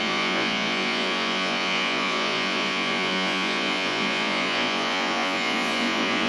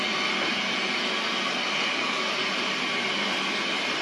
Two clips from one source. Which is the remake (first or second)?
first